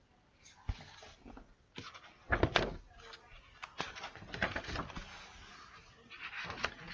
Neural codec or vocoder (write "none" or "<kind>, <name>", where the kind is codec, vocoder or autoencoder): none